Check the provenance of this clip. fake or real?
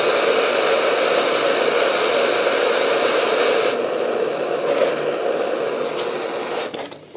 real